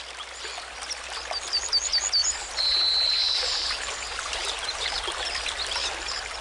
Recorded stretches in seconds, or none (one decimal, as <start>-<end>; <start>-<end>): 0.0-2.2; 5.0-6.4

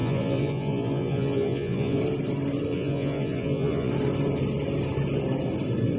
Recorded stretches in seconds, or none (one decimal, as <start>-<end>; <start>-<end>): 2.0-2.7; 3.9-6.0

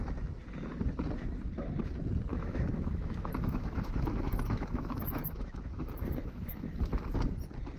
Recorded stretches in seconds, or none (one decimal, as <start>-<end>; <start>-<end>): 0.0-2.3; 6.8-7.8

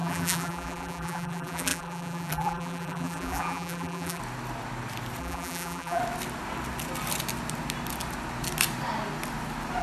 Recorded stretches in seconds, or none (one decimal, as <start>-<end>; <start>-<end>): 4.2-5.2; 6.0-9.8

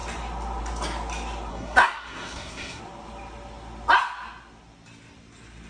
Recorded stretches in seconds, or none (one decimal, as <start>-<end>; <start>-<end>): 0.0-1.5; 2.8-5.7

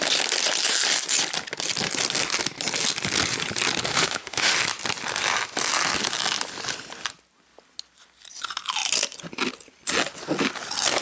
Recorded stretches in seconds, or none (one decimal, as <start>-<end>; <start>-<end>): 0.0-3.9; 4.5-11.0

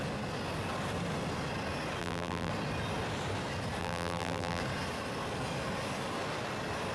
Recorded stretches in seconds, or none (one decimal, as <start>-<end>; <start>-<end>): 0.0-2.0; 2.5-3.8; 4.6-6.9

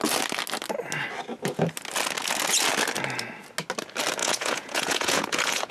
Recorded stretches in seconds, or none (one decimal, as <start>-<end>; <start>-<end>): 0.0-4.2